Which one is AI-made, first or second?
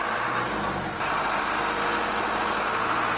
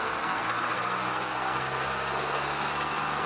second